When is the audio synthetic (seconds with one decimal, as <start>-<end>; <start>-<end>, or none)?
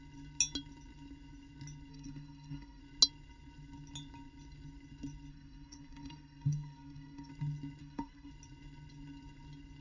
1.9-2.8; 5.3-7.3; 7.8-8.3